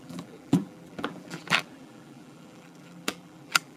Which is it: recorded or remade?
remade